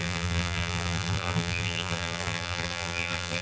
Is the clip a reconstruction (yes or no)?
yes